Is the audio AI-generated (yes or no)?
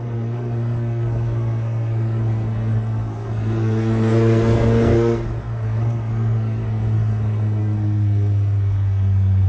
yes